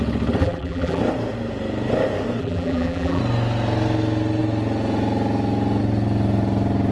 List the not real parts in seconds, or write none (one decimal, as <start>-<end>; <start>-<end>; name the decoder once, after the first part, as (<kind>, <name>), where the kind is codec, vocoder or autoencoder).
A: 0.4-1.0 (vocoder, BigVGAN v2); 2.4-3.2

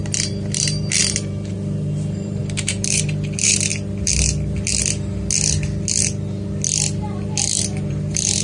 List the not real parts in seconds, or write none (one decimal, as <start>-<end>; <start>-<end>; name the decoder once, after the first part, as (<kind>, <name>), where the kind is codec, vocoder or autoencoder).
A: 0.0-3.7 (vocoder, BigVGAN v2); 7.9-8.4

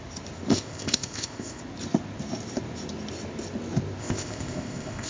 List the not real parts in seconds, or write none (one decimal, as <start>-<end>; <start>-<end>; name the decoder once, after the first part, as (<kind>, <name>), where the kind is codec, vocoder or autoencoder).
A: 0.5-1.6 (codec, ZipCodec); 4.0-5.1

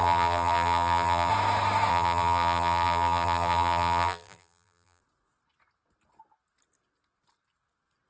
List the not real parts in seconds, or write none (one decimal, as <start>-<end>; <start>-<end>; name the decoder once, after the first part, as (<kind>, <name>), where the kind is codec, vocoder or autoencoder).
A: 0.0-1.3 (vocoder, BigVGAN v2); 1.9-5.0

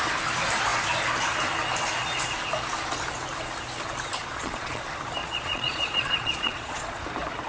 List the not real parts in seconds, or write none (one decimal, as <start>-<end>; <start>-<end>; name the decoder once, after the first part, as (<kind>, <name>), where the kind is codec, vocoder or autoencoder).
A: 4.2-4.8 (vocoder, Vocos); 5.2-7.0